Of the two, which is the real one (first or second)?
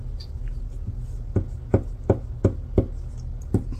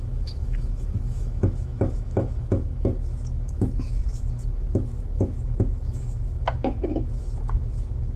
first